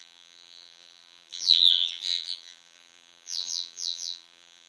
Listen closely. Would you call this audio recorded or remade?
remade